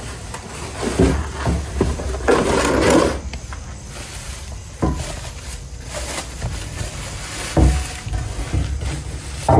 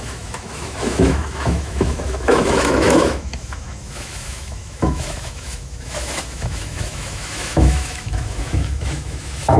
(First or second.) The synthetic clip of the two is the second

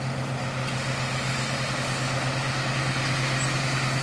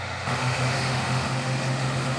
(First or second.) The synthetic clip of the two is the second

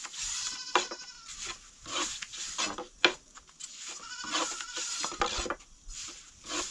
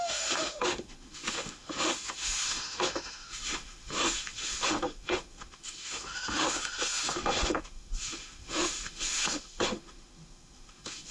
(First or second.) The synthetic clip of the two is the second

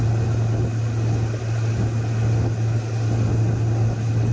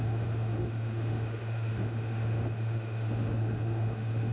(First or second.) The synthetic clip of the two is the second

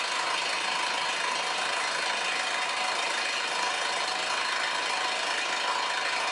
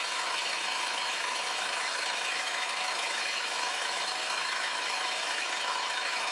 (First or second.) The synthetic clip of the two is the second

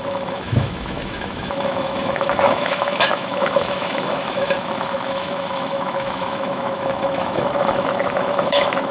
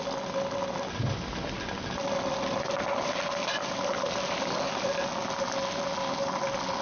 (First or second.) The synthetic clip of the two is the first